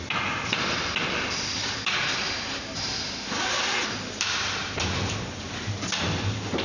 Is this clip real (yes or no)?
yes